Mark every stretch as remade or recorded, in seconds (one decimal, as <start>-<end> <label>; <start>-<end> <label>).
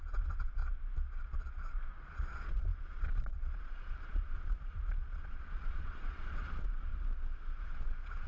0.0-0.6 remade; 0.6-1.7 recorded; 1.7-6.9 remade; 6.9-7.6 recorded; 7.6-8.3 remade